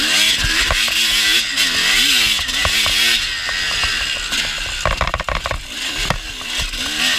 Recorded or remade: recorded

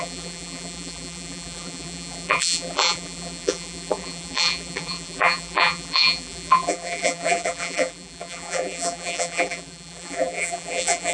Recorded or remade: remade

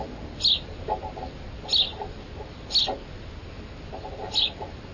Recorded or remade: recorded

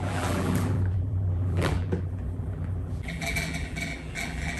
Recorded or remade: remade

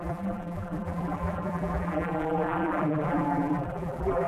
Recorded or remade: remade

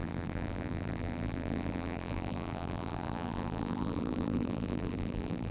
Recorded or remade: remade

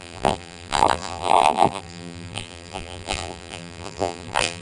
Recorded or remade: remade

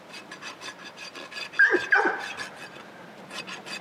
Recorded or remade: recorded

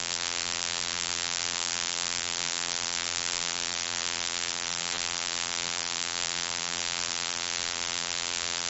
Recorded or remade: remade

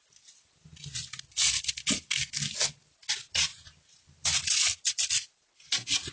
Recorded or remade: remade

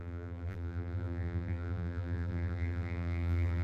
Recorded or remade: remade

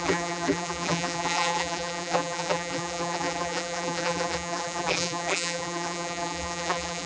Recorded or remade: remade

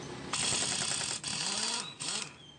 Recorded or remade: recorded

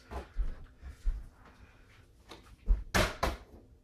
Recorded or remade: recorded